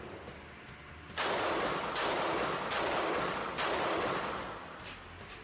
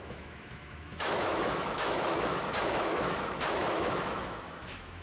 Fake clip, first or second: second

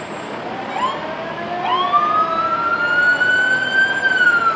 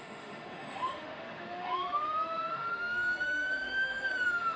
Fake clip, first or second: second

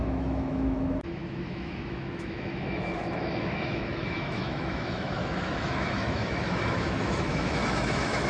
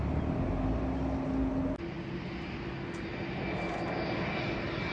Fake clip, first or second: first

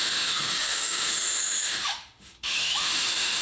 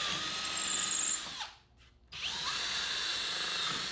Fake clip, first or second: first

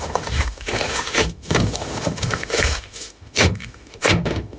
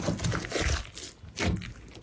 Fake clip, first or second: first